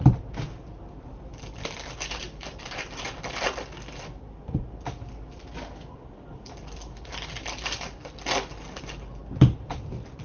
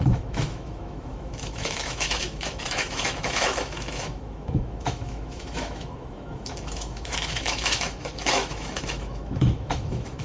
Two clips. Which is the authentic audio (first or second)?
first